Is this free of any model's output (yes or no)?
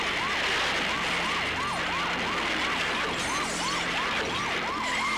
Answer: yes